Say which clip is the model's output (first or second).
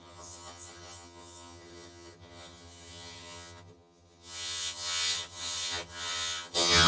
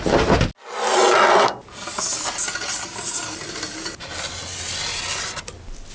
first